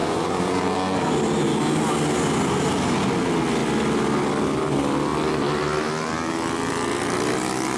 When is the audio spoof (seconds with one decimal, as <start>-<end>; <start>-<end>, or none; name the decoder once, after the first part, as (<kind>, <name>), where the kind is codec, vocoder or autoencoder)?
0.0-0.6 (vocoder, Vocos)